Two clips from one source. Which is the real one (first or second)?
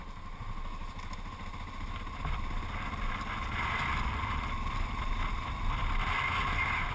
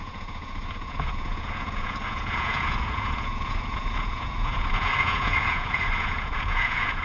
first